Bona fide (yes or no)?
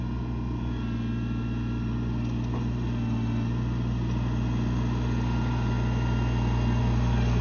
yes